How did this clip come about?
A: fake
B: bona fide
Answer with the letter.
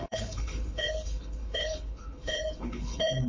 A